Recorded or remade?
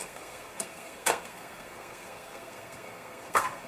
remade